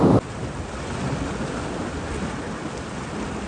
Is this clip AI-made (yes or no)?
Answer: no